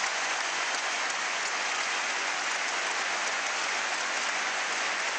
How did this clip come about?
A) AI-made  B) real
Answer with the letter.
A